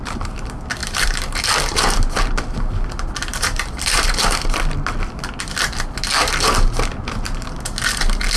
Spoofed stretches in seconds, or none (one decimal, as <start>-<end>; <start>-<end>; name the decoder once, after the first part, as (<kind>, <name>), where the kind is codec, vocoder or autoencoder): 0.8-1.4 (vocoder, BigVGAN v2); 3.3-4.2